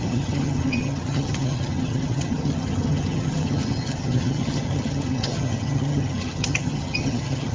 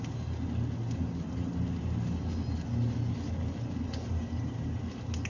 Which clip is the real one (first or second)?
second